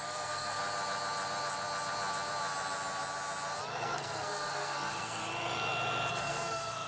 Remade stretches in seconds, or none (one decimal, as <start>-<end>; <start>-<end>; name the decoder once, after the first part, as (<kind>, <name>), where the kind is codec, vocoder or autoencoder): 0.0-0.6 (codec, SNAC); 3.7-5.2; 6.1-6.9